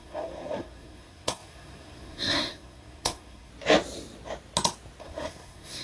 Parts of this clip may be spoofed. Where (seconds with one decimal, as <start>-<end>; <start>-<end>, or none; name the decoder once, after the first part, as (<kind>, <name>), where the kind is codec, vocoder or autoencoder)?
0.0-3.5 (codec, SNAC); 5.0-5.8